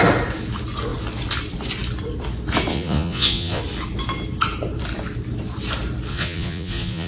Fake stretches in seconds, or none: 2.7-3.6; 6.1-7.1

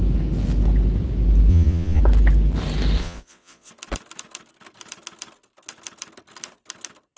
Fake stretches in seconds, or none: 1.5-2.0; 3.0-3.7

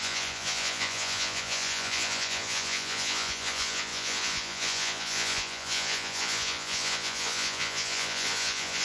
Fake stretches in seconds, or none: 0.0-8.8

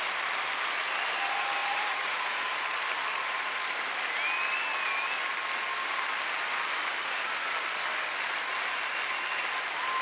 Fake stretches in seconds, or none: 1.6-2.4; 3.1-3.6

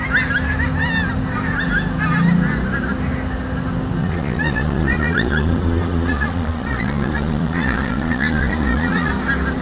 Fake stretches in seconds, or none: 4.0-9.1

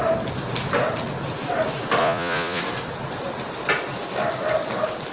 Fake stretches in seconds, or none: 2.0-2.6

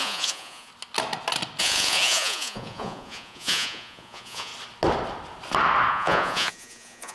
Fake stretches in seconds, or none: 0.0-0.7; 1.6-4.5; 5.9-7.1

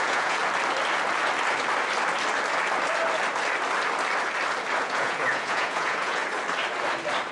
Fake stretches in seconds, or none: 0.0-0.4; 4.8-6.2